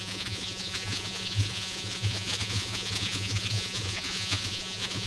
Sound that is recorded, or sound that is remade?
remade